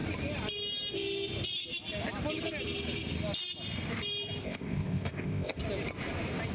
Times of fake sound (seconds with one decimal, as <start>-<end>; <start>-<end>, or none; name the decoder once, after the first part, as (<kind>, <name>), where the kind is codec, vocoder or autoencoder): 4.4-5.6 (codec, ZipCodec)